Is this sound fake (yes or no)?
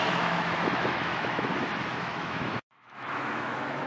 yes